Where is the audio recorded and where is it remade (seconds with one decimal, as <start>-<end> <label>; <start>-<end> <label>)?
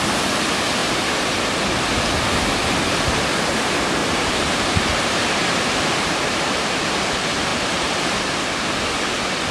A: 0.0-0.8 recorded; 0.8-1.5 remade; 1.5-4.0 recorded; 4.0-6.8 remade; 6.8-7.5 recorded; 7.5-8.2 remade; 8.2-9.5 recorded